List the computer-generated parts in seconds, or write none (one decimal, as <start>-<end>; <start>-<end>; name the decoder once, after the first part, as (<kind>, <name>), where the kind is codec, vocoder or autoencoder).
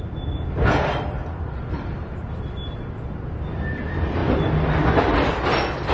none